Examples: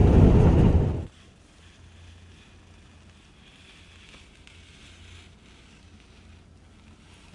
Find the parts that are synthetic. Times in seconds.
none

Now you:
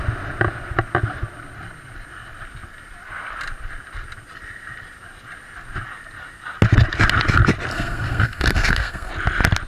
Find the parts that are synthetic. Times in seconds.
7.7-9.1 (codec, SNAC)

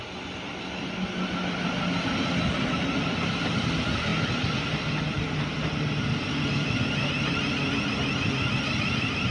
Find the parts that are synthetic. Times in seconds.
none

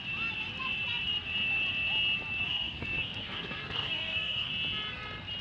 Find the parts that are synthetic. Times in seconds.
2.4-4.5 (codec, SNAC)

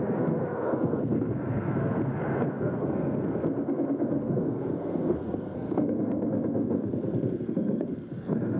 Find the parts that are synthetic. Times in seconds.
0.0-8.6 (codec, SNAC)

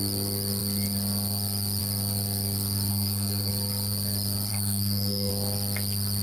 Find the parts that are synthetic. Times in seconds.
2.9-3.5 (codec, SNAC); 4.5-5.3

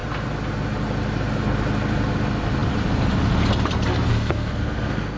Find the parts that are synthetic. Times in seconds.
4.1-5.2 (codec, SNAC)